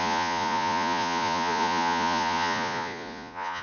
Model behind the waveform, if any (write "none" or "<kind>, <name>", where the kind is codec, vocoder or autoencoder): vocoder, Vocos